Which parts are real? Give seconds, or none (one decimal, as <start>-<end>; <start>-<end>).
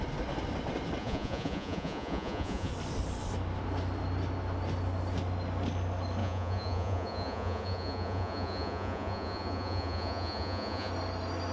0.0-1.0; 2.7-6.2; 10.9-11.5